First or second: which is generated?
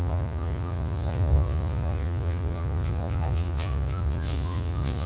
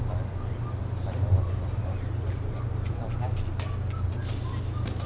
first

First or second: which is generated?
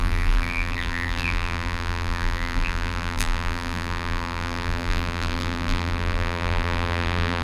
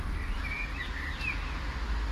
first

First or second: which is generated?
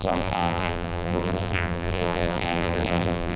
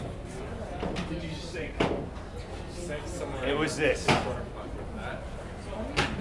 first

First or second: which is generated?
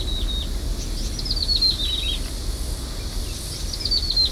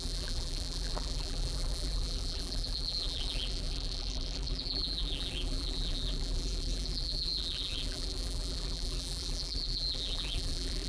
second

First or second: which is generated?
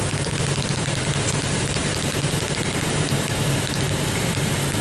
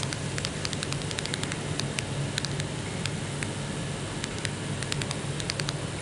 first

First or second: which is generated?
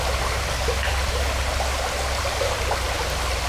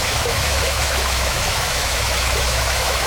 second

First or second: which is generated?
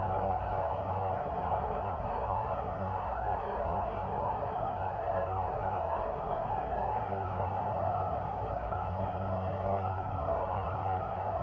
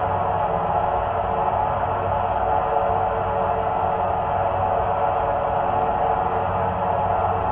first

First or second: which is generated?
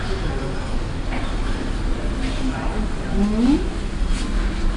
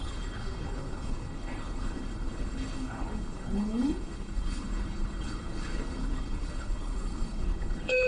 second